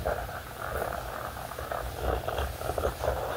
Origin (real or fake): real